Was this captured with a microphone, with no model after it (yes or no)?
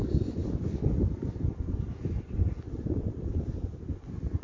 yes